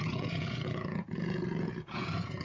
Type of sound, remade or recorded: remade